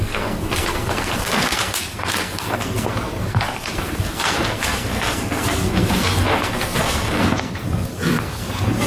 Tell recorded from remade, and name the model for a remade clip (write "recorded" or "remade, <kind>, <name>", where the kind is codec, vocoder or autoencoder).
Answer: remade, codec, SNAC